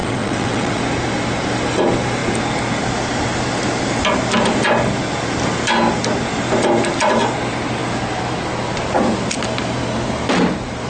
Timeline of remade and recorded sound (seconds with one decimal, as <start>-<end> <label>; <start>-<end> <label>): 0.0-0.8 remade; 0.8-10.9 recorded